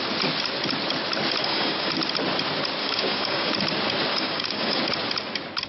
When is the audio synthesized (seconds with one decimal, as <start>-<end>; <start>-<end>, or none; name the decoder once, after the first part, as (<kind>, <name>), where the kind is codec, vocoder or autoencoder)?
1.4-1.9 (codec, DAC); 2.8-3.5; 4.1-4.8

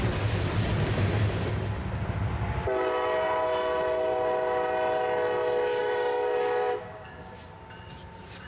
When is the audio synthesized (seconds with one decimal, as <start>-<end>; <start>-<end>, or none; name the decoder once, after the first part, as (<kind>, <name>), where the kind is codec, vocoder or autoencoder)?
5.8-7.4 (codec, DAC)

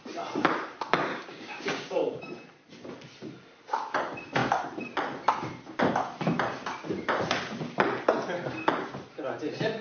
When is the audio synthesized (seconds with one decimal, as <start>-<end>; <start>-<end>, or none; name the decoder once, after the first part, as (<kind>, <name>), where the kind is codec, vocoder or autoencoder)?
1.1-2.2 (codec, DAC)